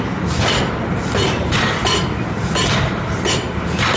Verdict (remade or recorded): recorded